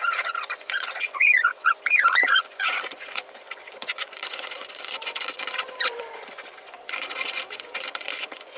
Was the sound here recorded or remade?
remade